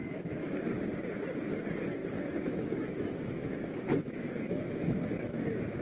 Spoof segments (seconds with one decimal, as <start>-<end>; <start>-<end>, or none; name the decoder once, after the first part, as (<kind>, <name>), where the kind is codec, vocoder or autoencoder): 0.0-0.7 (autoencoder, DAC-VAE); 2.0-5.8